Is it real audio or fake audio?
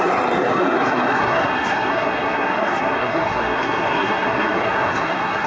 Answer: fake